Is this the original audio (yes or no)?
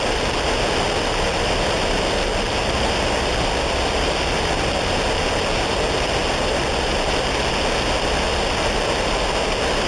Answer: yes